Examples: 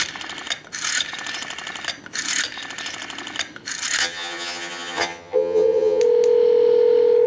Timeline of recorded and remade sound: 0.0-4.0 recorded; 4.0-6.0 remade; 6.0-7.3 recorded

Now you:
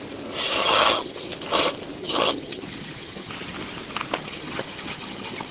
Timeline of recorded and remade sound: 0.0-0.6 recorded; 0.6-1.3 remade; 1.3-2.0 recorded; 2.0-3.3 remade; 3.3-4.2 recorded; 4.2-5.5 remade

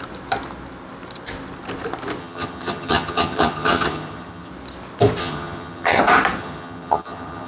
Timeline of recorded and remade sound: 0.0-2.2 recorded; 2.2-4.5 remade; 4.5-5.2 recorded; 5.2-6.0 remade; 6.0-6.4 recorded; 6.4-7.5 remade

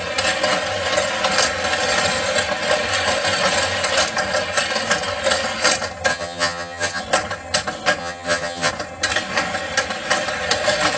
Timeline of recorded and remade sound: 0.0-6.1 recorded; 6.1-7.0 remade; 7.0-8.0 recorded; 8.0-8.7 remade; 8.7-11.0 recorded

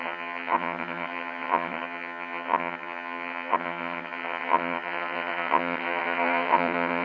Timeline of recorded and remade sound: 0.0-7.0 remade